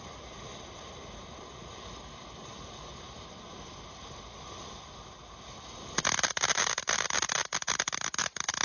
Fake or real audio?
real